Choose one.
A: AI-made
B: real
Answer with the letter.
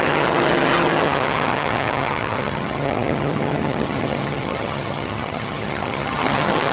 A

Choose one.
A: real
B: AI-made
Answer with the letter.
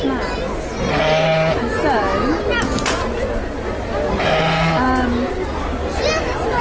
A